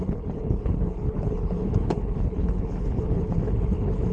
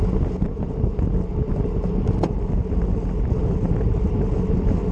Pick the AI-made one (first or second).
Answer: first